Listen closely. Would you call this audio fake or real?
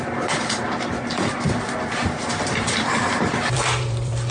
fake